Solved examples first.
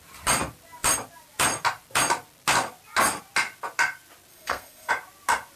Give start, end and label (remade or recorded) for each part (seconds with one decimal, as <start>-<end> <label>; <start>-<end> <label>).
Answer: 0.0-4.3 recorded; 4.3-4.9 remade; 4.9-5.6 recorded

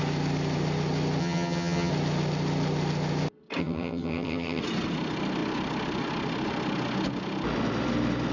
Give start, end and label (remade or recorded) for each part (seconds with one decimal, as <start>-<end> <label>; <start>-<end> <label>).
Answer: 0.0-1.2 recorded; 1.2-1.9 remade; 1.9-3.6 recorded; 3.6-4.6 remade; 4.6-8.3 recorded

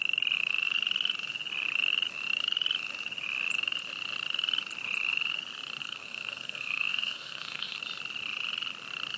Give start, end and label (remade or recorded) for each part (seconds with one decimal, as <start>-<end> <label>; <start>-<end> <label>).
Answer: 0.0-5.8 recorded; 5.8-7.8 remade; 7.8-9.2 recorded

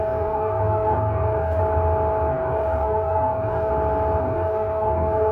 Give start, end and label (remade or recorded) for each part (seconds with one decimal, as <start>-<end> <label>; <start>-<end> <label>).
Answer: 0.0-1.6 remade; 1.6-2.3 recorded; 2.3-3.7 remade; 3.7-4.2 recorded; 4.2-5.3 remade

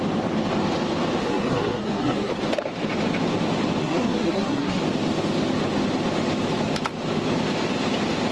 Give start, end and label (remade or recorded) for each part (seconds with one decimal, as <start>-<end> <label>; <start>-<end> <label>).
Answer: 0.0-1.2 recorded; 1.2-2.4 remade; 2.4-3.8 recorded; 3.8-4.8 remade; 4.8-8.3 recorded

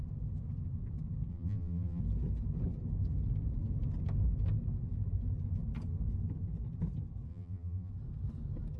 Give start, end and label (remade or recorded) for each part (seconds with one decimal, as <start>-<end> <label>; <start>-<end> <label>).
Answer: 0.0-1.3 recorded; 1.3-2.0 remade; 2.0-7.3 recorded; 7.3-7.9 remade; 7.9-8.8 recorded